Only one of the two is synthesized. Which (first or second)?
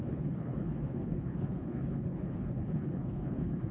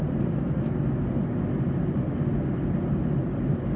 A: first